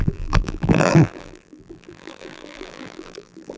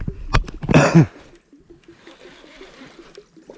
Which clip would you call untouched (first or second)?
second